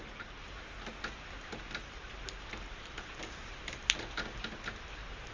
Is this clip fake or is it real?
real